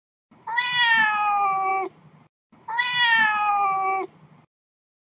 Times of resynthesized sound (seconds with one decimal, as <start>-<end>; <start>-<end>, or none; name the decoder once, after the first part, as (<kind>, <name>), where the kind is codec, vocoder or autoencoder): none